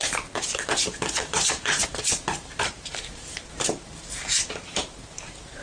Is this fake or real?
fake